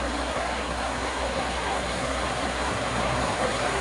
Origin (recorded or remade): remade